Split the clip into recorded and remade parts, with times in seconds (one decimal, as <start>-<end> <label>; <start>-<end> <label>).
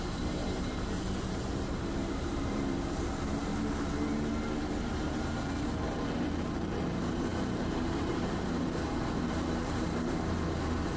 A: 0.0-3.5 remade; 3.5-4.9 recorded; 4.9-11.0 remade